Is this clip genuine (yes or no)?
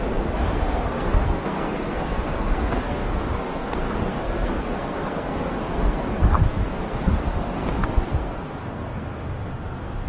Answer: no